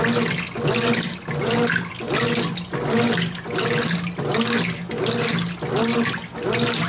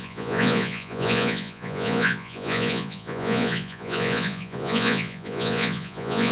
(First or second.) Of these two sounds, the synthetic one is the second